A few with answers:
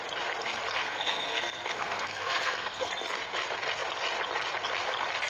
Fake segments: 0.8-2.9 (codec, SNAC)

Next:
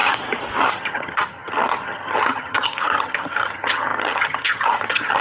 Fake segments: 0.6-5.2 (vocoder, HiFi-GAN)

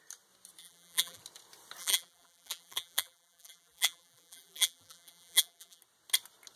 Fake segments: 0.6-1.2 (vocoder, BigVGAN v2); 1.8-5.8

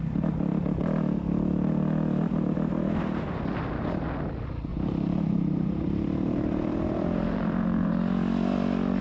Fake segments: 4.7-7.9 (vocoder, BigVGAN v2)